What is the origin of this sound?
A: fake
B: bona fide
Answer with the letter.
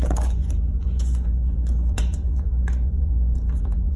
A